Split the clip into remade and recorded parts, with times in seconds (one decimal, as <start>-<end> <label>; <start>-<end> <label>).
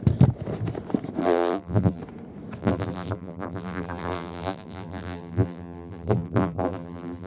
0.0-1.2 recorded; 1.2-2.0 remade; 2.0-2.6 recorded; 2.6-7.3 remade